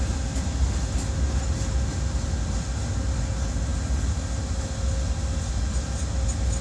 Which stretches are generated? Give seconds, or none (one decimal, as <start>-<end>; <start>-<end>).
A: none